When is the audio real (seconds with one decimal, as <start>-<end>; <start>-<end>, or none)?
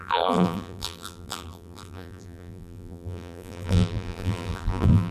none